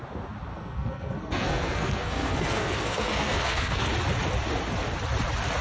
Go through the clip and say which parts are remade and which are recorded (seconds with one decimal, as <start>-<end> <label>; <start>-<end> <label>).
0.0-0.5 recorded; 0.5-3.9 remade; 3.9-5.6 recorded